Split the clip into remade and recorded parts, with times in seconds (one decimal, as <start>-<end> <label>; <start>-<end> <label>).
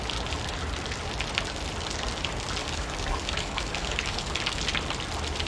0.0-2.6 recorded; 2.6-4.6 remade; 4.6-5.5 recorded